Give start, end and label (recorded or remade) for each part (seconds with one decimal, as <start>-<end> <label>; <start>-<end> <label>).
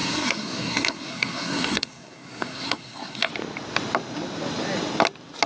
0.0-3.3 remade; 3.3-5.5 recorded